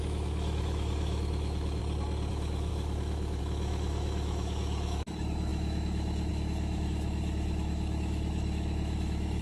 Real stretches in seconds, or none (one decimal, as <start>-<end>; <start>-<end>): 1.8-2.3